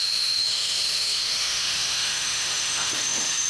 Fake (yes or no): yes